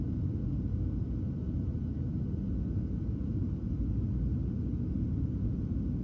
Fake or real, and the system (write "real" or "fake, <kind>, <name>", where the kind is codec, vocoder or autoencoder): real